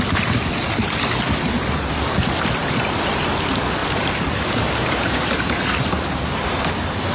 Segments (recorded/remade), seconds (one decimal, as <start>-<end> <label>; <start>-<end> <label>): 0.0-3.8 recorded; 3.8-7.1 remade